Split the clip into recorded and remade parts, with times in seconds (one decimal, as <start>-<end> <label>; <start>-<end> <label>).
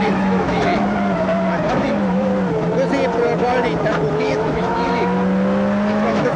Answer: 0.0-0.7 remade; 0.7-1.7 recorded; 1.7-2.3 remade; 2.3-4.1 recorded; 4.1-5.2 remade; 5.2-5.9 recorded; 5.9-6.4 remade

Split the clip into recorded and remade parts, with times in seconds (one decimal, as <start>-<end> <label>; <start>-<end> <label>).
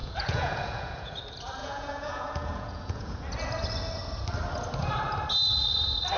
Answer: 0.0-1.2 remade; 1.2-1.6 recorded; 1.6-3.2 remade; 3.2-6.2 recorded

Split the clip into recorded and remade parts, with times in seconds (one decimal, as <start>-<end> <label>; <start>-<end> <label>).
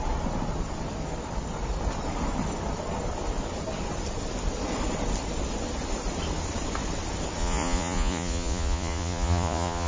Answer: 0.0-7.4 recorded; 7.4-9.9 remade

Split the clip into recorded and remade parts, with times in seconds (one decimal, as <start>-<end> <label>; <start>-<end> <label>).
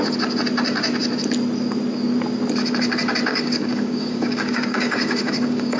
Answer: 0.0-3.3 recorded; 3.3-5.8 remade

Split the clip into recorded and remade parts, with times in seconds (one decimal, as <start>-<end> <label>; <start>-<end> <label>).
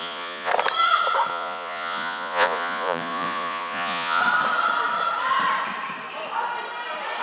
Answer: 0.0-0.5 remade; 0.5-1.3 recorded; 1.3-4.2 remade; 4.2-7.2 recorded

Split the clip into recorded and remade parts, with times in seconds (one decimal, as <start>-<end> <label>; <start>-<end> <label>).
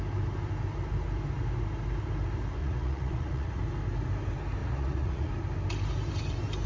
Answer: 0.0-2.6 recorded; 2.6-3.6 remade; 3.6-4.6 recorded; 4.6-5.3 remade; 5.3-6.7 recorded